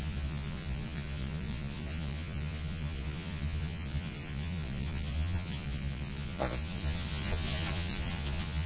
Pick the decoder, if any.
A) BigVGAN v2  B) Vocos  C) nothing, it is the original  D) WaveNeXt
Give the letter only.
B